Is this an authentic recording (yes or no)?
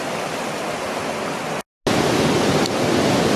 yes